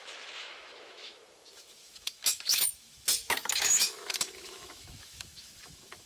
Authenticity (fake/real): fake